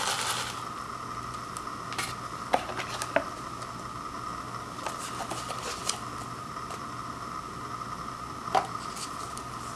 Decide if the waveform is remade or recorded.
recorded